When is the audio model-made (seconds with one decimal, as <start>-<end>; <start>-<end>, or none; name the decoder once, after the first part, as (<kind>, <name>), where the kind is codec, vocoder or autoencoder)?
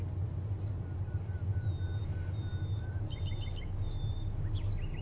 none